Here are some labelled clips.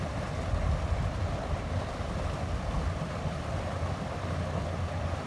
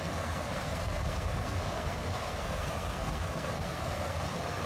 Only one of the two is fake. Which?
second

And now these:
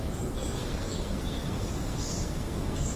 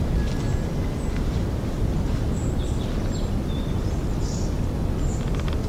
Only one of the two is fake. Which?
first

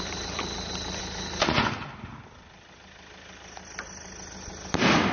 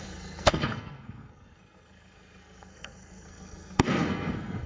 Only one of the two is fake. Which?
second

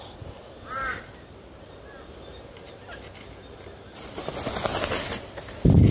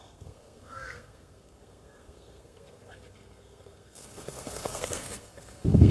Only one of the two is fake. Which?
second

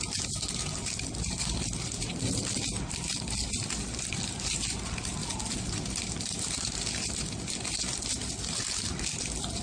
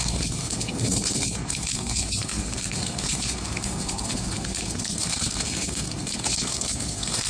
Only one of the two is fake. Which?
second